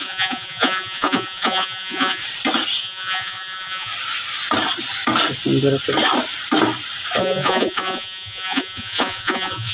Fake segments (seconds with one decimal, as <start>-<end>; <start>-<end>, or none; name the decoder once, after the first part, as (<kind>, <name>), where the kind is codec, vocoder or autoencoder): 0.0-2.2 (vocoder, Vocos); 2.8-3.9; 7.2-9.7